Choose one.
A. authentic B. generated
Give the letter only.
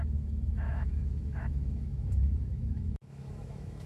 B